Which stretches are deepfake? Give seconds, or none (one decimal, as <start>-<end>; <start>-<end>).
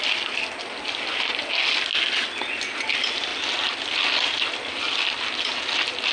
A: none